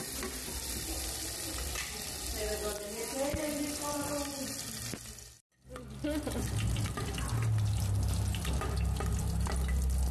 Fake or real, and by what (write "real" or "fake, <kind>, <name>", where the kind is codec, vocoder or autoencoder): real